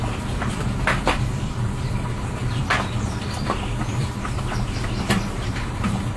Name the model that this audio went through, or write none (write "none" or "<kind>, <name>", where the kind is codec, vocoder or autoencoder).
vocoder, BigVGAN v2